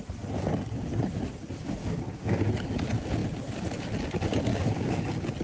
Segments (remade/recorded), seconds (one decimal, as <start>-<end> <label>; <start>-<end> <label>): 0.0-1.8 recorded; 1.8-2.5 remade; 2.5-4.5 recorded; 4.5-5.0 remade; 5.0-5.4 recorded